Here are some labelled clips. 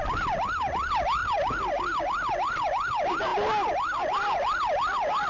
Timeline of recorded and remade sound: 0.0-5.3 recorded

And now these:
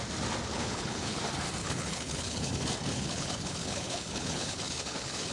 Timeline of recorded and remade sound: 0.0-0.5 recorded; 0.5-1.2 remade; 1.2-1.6 recorded; 1.6-2.5 remade; 2.5-2.9 recorded; 2.9-5.3 remade

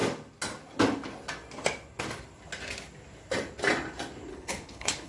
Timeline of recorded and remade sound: 0.0-4.3 recorded; 4.3-5.1 remade